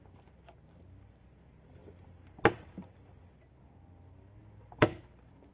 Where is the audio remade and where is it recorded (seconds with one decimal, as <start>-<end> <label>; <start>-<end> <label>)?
0.0-5.5 recorded

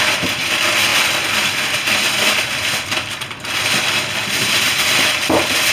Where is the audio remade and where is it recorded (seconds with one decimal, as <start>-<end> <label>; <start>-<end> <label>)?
0.0-5.7 recorded

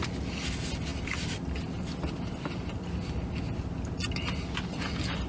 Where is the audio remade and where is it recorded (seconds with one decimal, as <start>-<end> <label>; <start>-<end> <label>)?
0.0-5.3 recorded

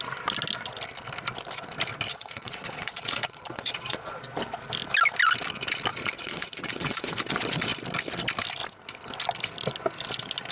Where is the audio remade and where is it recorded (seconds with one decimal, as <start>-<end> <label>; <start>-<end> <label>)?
0.0-2.1 recorded; 2.1-4.2 remade; 4.2-5.9 recorded; 5.9-7.2 remade; 7.2-10.5 recorded

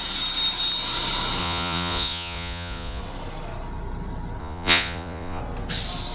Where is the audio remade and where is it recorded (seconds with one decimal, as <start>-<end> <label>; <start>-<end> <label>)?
0.0-1.4 recorded; 1.4-3.0 remade; 3.0-4.4 recorded; 4.4-5.4 remade; 5.4-6.1 recorded